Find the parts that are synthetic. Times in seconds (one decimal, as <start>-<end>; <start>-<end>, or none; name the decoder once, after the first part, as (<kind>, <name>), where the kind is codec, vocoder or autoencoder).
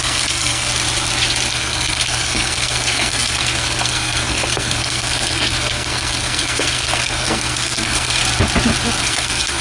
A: 0.0-0.7 (codec, SNAC); 1.5-8.2; 9.0-9.6